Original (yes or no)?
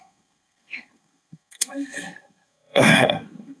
no